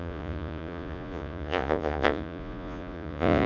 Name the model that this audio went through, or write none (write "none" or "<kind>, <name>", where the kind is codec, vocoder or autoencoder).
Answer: vocoder, Vocos